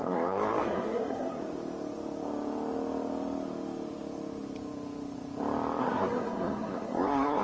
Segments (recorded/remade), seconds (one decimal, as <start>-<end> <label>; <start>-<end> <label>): 0.0-1.4 remade; 1.4-5.8 recorded; 5.8-7.4 remade